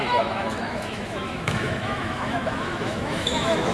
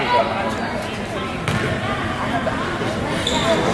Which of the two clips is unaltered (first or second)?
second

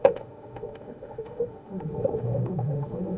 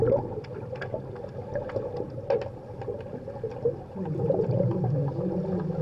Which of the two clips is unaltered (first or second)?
second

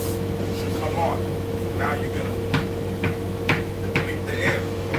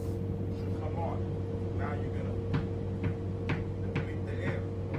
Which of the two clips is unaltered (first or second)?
second